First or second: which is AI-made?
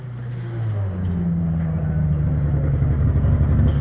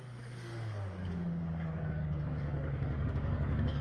second